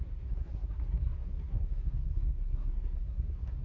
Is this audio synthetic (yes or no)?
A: yes